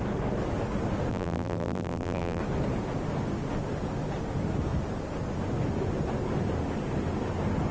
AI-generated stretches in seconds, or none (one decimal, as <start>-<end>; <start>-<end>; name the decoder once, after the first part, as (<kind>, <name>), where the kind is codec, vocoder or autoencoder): 1.1-2.4 (vocoder, BigVGAN v2)